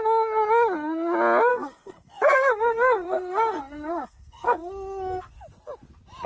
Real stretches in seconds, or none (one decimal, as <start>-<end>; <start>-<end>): 0.0-1.5; 5.3-6.3